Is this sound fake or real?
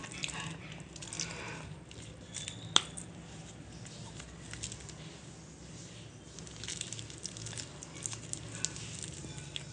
real